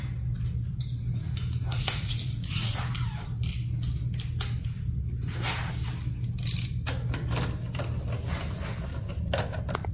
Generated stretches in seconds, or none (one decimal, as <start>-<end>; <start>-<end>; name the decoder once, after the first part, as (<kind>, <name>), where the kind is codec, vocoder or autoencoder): 1.7-2.8 (vocoder, Vocos)